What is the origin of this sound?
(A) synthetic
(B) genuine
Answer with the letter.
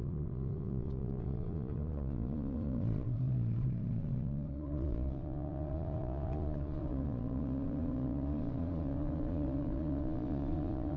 A